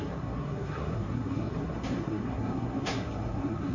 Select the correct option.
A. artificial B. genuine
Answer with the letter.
A